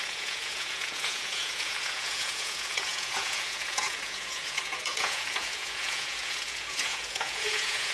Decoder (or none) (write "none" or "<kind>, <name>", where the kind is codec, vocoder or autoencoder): vocoder, Vocos